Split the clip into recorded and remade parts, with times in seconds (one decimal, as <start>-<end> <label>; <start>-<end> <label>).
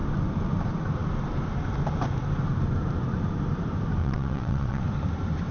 0.0-4.0 recorded; 4.0-4.8 remade; 4.8-5.5 recorded